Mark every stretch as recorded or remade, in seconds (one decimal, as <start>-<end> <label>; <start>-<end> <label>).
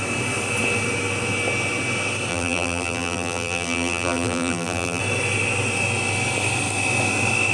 0.0-2.3 recorded; 2.3-5.0 remade; 5.0-7.5 recorded